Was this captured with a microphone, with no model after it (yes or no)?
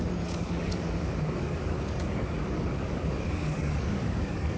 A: no